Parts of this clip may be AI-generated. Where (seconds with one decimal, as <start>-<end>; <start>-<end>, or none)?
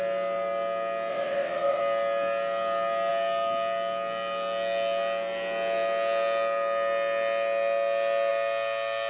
1.1-1.8